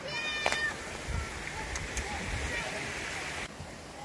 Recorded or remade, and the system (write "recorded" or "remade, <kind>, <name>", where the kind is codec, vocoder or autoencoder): remade, vocoder, BigVGAN v2